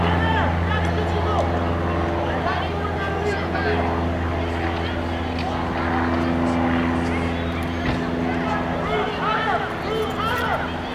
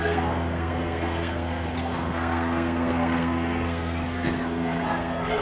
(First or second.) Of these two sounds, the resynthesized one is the second